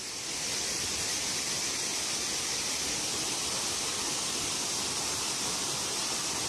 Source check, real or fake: real